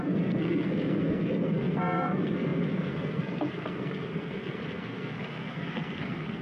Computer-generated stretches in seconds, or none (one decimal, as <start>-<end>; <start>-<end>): 0.0-6.4

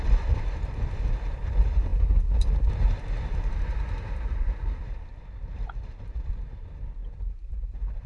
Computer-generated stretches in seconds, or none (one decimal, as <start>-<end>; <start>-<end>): 0.0-1.9; 6.0-8.1

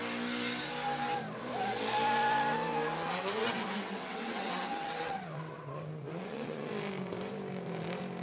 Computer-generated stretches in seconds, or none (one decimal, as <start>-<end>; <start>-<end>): 3.0-6.7